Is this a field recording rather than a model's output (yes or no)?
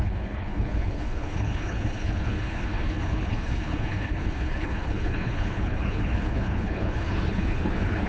no